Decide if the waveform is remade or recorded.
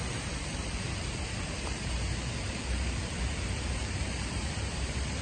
remade